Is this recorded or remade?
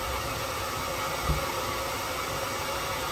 recorded